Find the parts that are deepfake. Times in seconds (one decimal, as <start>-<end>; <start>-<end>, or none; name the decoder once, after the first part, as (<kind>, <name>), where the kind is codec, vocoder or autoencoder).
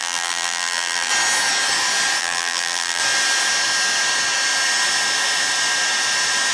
0.0-1.1 (vocoder, BigVGAN v2); 2.2-3.0